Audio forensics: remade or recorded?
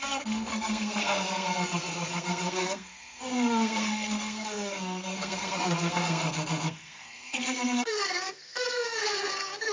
remade